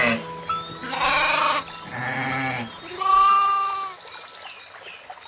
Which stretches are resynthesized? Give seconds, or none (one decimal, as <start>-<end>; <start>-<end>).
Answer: none